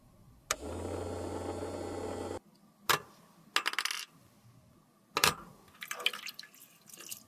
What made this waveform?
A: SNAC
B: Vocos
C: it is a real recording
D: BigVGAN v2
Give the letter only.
C